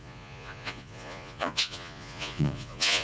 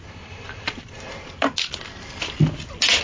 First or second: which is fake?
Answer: first